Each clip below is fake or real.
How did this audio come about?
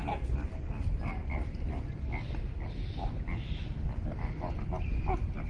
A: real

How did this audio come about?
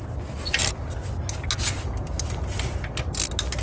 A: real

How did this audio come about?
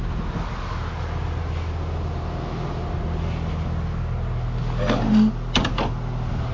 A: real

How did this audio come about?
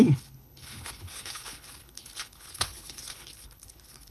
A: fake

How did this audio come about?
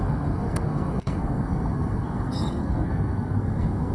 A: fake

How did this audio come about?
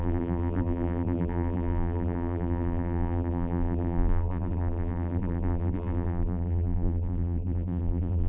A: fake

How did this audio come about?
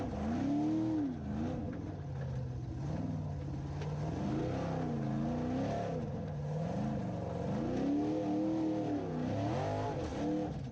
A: real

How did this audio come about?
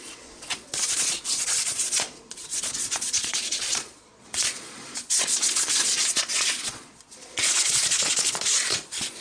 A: fake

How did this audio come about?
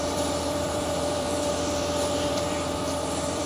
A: fake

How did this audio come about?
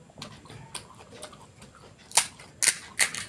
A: real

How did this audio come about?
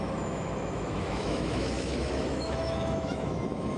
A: fake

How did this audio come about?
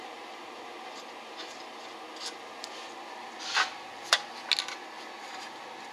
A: real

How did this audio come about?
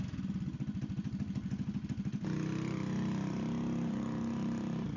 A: real